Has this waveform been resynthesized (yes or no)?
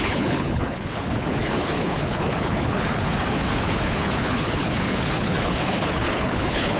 yes